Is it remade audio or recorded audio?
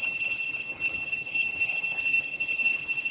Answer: remade